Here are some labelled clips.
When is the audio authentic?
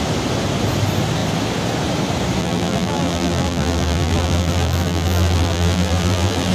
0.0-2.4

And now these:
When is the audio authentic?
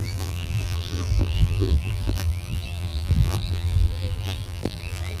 none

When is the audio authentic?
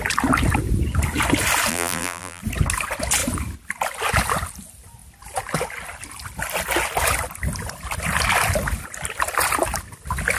0.0-1.7; 2.4-10.4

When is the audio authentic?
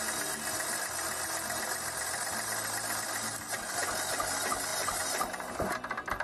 0.0-6.2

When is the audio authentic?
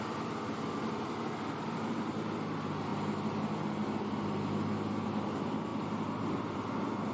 2.9-4.7; 5.7-6.2